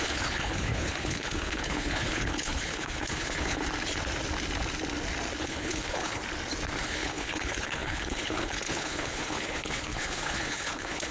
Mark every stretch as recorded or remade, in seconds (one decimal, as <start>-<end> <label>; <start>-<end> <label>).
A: 0.0-3.6 remade; 3.6-5.4 recorded; 5.4-6.2 remade; 6.2-6.8 recorded; 6.8-11.1 remade